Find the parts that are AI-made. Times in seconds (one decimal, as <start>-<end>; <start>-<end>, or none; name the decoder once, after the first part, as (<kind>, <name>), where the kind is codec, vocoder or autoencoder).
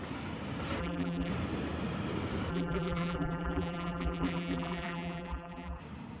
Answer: 0.8-1.3 (vocoder, BigVGAN v2); 2.5-5.8